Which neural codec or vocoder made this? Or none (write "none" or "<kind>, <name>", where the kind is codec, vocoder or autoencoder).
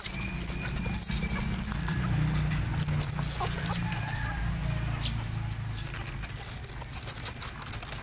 none